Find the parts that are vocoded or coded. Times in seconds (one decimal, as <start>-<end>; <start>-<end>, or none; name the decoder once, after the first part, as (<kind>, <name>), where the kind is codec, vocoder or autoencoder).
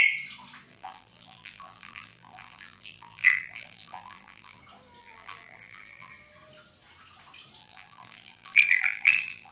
0.7-4.6 (vocoder, BigVGAN v2); 5.0-6.1; 7.6-9.5